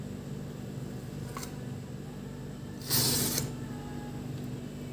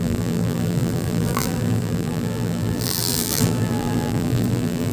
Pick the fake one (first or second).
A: second